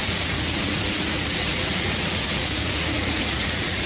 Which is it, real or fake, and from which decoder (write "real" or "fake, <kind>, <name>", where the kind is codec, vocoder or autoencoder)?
fake, vocoder, Vocos